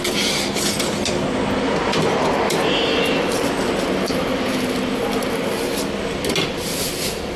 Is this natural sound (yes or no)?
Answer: yes